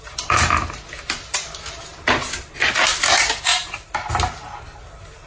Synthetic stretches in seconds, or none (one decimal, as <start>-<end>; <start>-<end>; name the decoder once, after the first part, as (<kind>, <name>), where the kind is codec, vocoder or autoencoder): 1.2-2.4 (vocoder, BigVGAN v2); 3.5-4.1